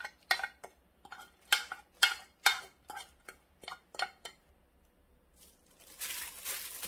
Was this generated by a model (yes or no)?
no